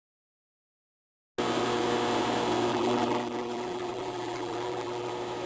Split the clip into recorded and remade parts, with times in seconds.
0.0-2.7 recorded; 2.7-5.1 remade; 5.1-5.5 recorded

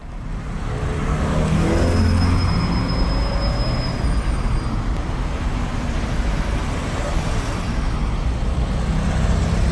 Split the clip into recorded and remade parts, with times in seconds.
0.0-9.7 recorded

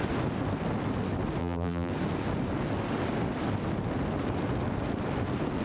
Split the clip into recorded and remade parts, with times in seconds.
0.0-1.4 recorded; 1.4-1.9 remade; 1.9-5.6 recorded

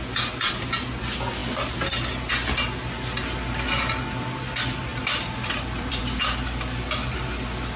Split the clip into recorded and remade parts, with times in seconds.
0.0-4.9 recorded; 4.9-6.0 remade; 6.0-7.8 recorded

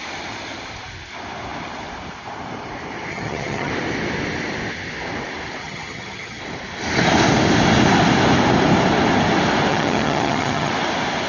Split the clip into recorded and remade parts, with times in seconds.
0.0-3.1 recorded; 3.1-3.7 remade; 3.7-5.6 recorded; 5.6-6.4 remade; 6.4-9.7 recorded; 9.7-10.7 remade; 10.7-11.3 recorded

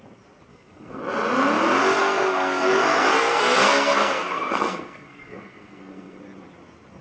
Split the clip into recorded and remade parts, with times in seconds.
0.0-0.5 recorded; 0.5-1.0 remade; 1.0-2.0 recorded; 2.0-6.2 remade; 6.2-7.0 recorded